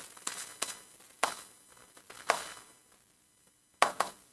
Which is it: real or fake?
real